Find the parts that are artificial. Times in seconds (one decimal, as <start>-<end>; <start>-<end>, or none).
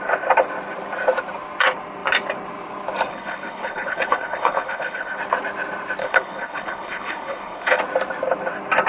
3.1-5.2; 6.0-7.8